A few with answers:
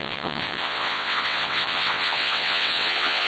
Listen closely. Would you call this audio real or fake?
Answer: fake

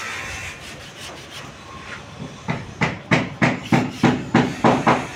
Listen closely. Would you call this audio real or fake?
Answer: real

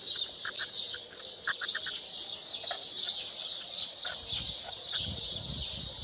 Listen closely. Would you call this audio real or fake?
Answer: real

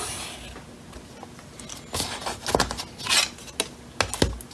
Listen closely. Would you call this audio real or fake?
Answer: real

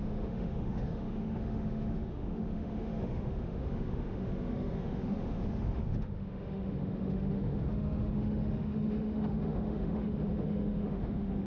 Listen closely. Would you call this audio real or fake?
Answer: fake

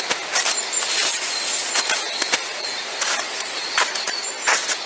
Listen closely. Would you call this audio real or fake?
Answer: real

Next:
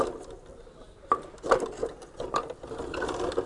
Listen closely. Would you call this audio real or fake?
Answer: real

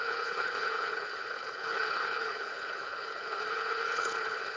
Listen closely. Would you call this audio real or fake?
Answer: fake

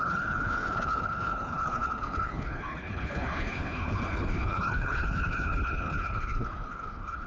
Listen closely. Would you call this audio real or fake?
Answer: fake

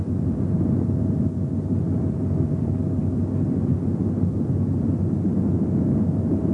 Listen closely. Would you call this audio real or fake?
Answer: real